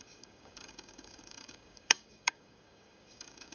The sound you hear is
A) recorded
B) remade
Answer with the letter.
B